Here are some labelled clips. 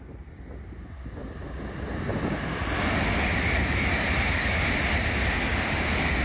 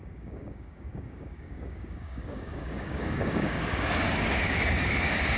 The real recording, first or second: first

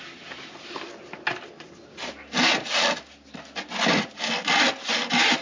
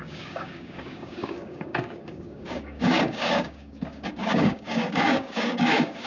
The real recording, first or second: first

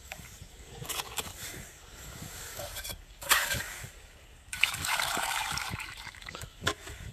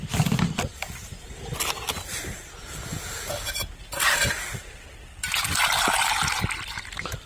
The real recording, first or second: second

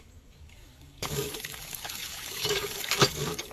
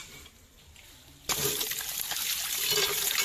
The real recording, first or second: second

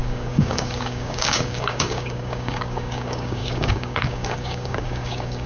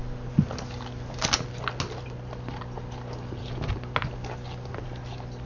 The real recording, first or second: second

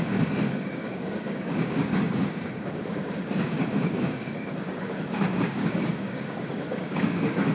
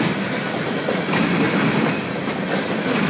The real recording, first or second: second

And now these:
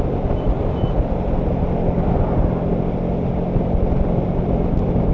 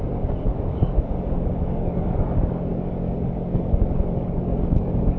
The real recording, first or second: first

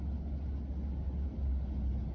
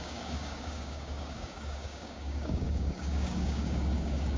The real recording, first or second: first